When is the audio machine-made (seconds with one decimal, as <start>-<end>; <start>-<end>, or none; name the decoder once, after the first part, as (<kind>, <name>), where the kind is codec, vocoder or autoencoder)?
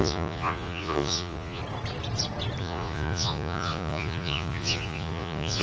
0.0-1.6 (vocoder, Vocos); 2.6-5.6